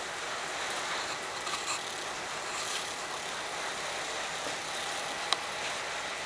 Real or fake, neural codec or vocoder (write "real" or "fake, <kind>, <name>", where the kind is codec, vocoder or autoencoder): real